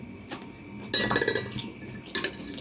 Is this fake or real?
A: real